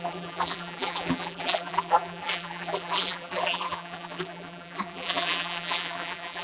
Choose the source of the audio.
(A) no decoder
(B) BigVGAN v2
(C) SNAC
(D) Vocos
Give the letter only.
B